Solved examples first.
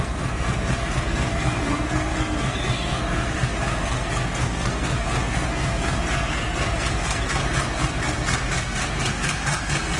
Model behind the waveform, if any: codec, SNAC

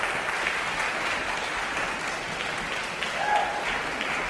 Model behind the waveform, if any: vocoder, BigVGAN v2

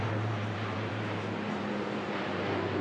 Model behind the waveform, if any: vocoder, BigVGAN v2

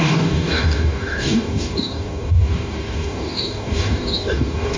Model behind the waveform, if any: codec, DAC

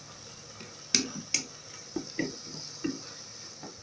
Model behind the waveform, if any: none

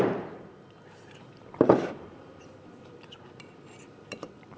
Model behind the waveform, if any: vocoder, BigVGAN v2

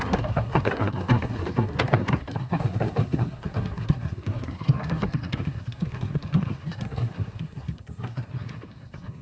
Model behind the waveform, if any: codec, SNAC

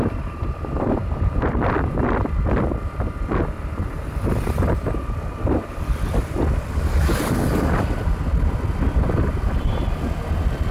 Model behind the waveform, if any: none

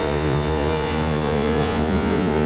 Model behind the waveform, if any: vocoder, Vocos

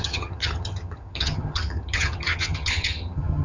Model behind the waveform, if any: vocoder, HiFi-GAN